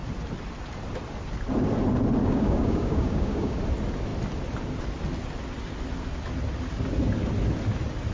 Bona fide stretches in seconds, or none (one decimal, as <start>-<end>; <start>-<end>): 0.0-2.2; 3.6-8.1